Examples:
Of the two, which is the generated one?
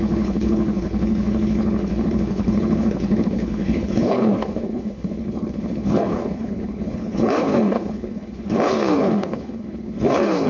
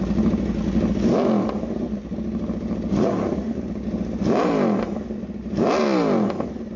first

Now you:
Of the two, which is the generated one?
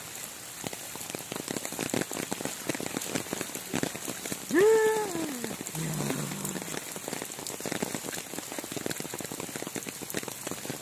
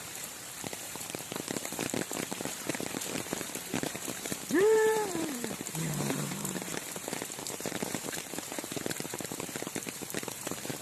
second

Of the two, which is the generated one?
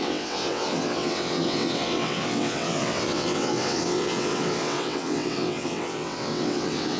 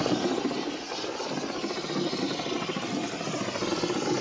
first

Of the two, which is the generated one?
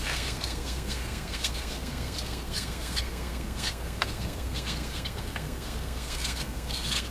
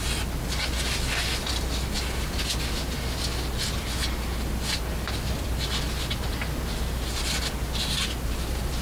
first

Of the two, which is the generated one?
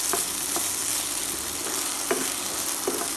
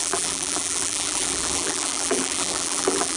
second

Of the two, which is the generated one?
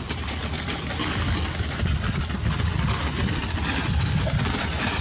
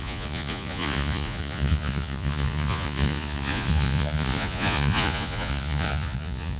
second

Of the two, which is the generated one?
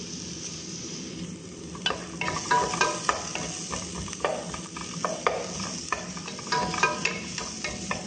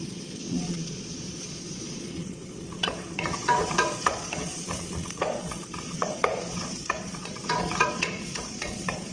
second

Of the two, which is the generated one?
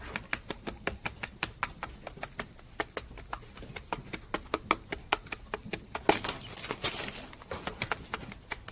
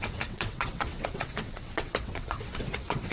second